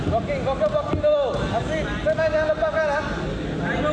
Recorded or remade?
recorded